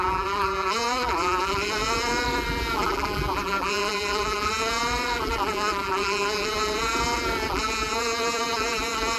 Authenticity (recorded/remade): remade